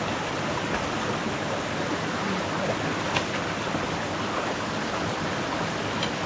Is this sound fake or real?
real